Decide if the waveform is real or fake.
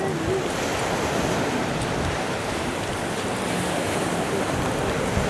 real